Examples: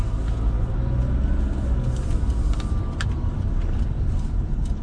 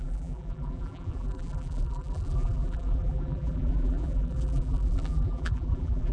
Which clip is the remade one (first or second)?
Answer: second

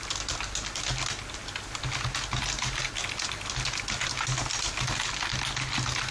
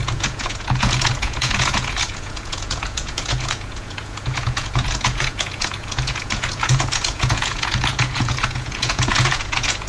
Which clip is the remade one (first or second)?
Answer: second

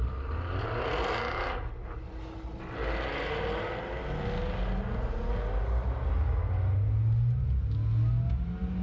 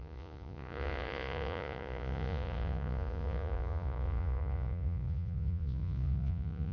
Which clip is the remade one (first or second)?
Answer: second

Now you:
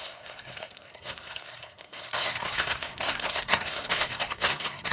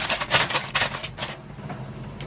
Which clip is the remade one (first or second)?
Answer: first